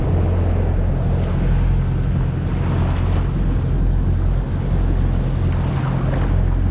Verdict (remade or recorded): recorded